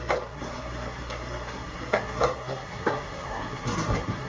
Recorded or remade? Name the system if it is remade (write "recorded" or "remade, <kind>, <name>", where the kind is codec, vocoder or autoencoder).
remade, codec, SNAC